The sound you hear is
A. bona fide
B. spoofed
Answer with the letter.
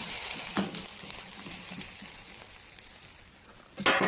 A